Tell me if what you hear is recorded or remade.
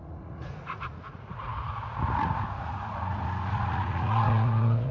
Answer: remade